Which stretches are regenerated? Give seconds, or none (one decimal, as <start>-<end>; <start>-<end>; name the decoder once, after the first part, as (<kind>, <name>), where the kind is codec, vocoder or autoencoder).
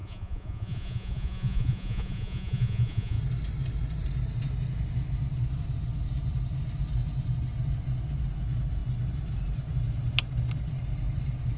0.0-3.2 (vocoder, Vocos)